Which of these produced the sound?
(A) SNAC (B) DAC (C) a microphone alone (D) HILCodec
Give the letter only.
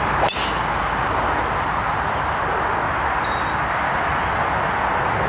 C